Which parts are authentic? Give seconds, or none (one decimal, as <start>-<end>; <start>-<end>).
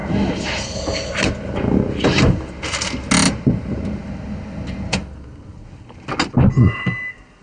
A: 0.0-7.4